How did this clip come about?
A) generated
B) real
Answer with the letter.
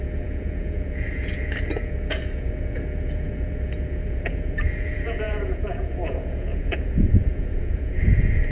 A